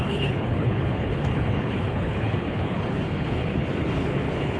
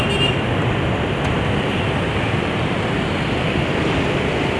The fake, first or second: first